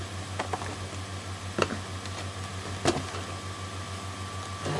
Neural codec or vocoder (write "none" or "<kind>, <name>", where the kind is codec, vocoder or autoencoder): none